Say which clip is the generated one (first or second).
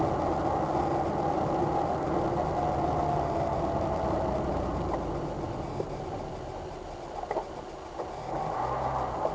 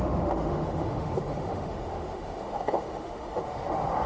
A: second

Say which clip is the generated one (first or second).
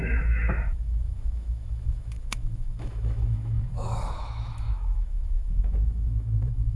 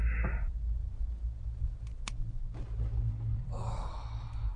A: first